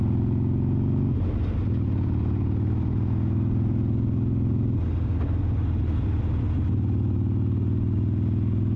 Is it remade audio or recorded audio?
recorded